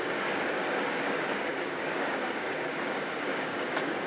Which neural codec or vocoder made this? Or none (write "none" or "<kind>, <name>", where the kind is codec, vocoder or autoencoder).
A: codec, DAC